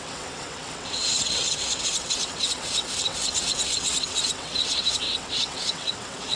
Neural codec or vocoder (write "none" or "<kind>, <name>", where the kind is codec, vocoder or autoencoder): vocoder, WaveNeXt